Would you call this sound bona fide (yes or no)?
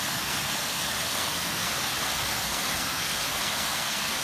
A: no